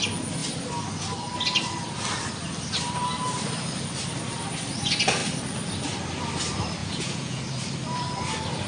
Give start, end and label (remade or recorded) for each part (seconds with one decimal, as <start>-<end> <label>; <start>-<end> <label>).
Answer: 0.0-6.8 recorded; 6.8-7.4 remade; 7.4-8.7 recorded